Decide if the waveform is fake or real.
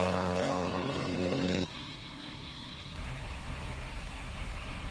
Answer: fake